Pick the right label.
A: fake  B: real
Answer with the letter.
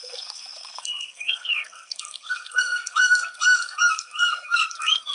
A